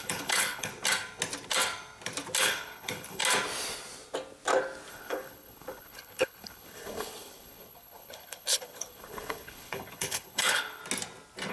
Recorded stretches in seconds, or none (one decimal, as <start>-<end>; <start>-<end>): 0.7-2.4; 3.2-4.9; 10.8-11.5